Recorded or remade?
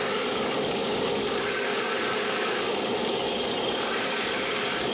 remade